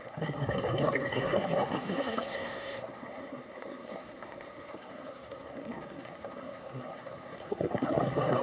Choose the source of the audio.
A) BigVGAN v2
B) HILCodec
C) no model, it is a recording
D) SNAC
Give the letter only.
D